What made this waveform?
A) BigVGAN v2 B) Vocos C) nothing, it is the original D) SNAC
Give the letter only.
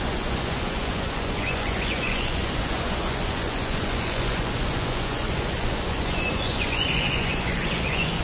B